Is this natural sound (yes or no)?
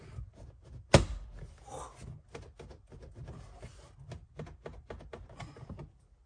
yes